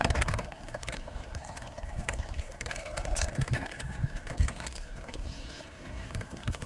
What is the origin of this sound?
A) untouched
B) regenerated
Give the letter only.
B